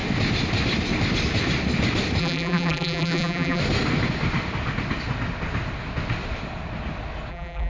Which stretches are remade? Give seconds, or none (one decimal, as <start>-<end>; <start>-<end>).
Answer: 2.2-3.6; 7.3-7.7